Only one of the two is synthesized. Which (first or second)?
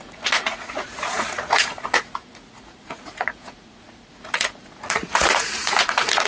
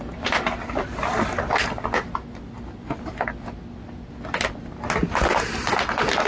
first